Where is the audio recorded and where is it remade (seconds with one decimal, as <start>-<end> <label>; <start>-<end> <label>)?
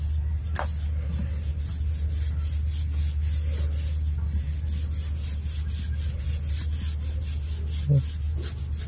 0.0-8.9 recorded